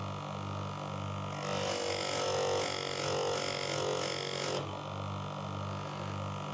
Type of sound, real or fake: real